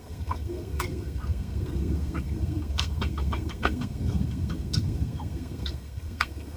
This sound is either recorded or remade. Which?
remade